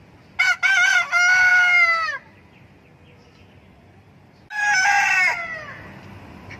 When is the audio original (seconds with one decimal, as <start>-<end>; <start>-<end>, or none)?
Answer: 0.0-6.6